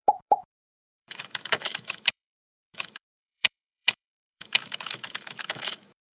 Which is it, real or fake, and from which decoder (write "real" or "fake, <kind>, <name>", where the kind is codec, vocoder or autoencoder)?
fake, autoencoder, DAC-VAE